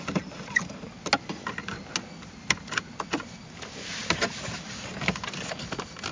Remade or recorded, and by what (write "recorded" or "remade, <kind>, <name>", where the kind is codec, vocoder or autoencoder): recorded